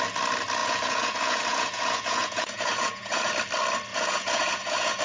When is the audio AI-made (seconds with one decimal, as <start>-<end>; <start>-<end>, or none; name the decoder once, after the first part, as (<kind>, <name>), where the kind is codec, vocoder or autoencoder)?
0.6-3.3 (vocoder, Vocos); 3.9-5.0